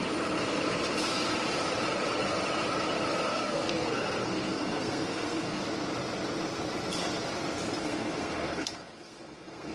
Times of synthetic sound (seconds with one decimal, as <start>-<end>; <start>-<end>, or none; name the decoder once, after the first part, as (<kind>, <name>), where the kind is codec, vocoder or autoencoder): 3.3-5.6 (codec, SNAC); 7.8-9.7